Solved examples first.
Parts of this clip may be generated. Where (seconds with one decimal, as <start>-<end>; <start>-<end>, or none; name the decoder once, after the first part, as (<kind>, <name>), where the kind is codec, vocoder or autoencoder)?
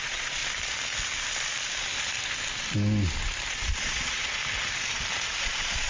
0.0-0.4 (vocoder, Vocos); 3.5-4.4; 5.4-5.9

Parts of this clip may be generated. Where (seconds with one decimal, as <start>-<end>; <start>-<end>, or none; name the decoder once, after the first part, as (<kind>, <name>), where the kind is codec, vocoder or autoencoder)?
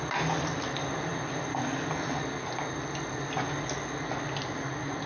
none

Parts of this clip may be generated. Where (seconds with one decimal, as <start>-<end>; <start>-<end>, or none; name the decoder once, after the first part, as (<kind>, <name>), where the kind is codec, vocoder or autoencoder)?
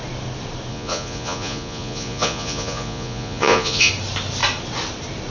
0.7-3.9 (vocoder, Vocos)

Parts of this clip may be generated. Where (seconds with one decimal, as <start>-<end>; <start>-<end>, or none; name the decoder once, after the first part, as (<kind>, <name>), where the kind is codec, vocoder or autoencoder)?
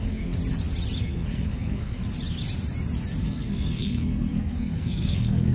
0.0-0.4 (codec, SNAC); 1.0-2.0; 3.2-5.5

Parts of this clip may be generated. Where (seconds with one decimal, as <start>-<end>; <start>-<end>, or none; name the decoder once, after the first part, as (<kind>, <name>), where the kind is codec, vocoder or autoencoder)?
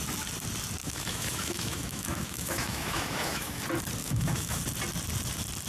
0.8-3.6 (autoencoder, DAC-VAE); 4.0-4.6